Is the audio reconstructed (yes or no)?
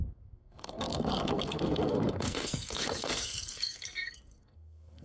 yes